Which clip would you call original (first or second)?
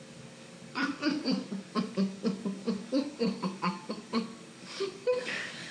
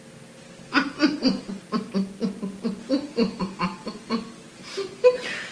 second